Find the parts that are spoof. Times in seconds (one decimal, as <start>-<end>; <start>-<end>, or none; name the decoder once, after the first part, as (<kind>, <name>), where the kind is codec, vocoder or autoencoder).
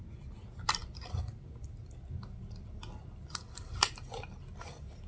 none